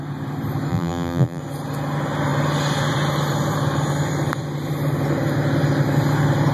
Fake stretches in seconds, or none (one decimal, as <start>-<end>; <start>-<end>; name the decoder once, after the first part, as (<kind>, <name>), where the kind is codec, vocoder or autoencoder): 0.7-1.4 (vocoder, BigVGAN v2)